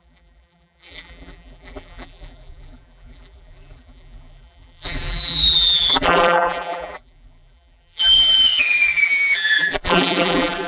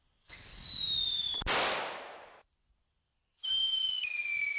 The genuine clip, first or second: second